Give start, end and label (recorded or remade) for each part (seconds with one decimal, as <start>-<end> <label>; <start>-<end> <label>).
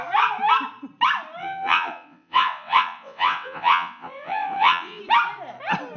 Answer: 0.0-1.4 recorded; 1.4-5.0 remade; 5.0-6.0 recorded